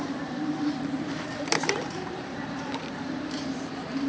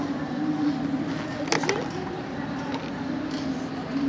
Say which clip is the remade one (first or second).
first